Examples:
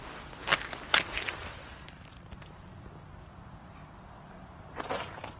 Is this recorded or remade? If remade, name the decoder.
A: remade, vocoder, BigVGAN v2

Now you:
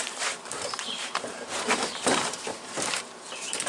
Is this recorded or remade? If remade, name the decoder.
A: remade, vocoder, BigVGAN v2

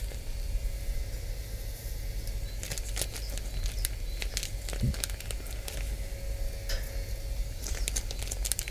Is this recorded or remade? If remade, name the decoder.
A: recorded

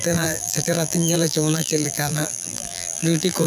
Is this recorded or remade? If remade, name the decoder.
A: remade, vocoder, BigVGAN v2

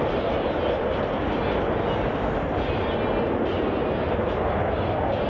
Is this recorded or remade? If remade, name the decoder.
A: recorded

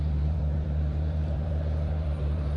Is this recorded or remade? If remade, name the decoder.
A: remade, vocoder, BigVGAN v2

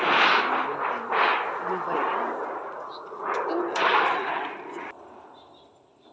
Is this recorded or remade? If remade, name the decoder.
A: recorded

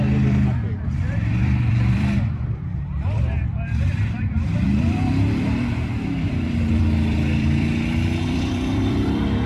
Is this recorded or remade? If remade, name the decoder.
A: remade, vocoder, BigVGAN v2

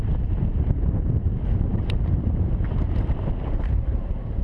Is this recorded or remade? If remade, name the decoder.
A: remade, vocoder, BigVGAN v2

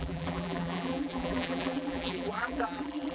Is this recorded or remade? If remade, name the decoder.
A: remade, vocoder, BigVGAN v2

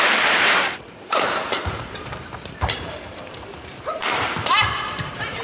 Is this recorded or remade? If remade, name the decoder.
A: remade, vocoder, BigVGAN v2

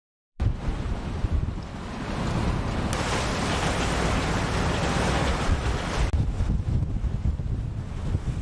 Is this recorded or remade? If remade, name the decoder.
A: remade, vocoder, BigVGAN v2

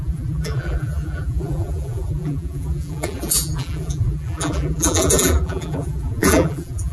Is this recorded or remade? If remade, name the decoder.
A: remade, vocoder, BigVGAN v2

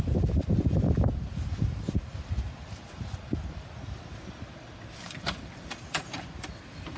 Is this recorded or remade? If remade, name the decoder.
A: remade, vocoder, BigVGAN v2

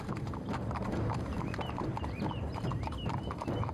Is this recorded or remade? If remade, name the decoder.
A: remade, vocoder, BigVGAN v2